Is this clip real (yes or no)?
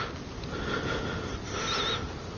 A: yes